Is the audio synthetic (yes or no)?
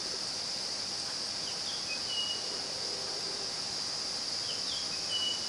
no